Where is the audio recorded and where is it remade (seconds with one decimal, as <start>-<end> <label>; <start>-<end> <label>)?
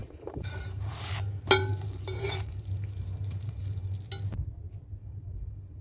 0.0-1.1 remade; 1.1-1.7 recorded; 1.7-4.0 remade; 4.0-5.0 recorded; 5.0-5.8 remade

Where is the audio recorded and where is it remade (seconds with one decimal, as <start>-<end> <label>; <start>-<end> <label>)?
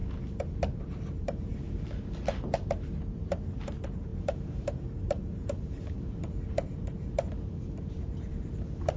0.0-0.8 recorded; 0.8-1.5 remade; 1.5-3.0 recorded; 3.0-9.0 remade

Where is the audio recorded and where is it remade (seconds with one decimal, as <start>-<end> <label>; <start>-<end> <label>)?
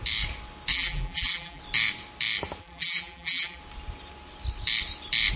0.0-0.7 recorded; 0.7-1.6 remade; 1.6-2.6 recorded; 2.6-3.6 remade; 3.6-5.4 recorded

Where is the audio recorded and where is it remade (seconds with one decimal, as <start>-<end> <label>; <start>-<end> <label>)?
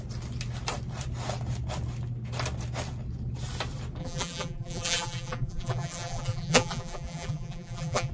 0.0-4.0 recorded; 4.0-8.1 remade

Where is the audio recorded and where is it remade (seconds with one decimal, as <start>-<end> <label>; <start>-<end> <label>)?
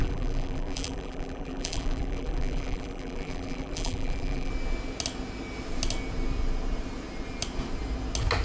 0.0-4.5 remade; 4.5-8.4 recorded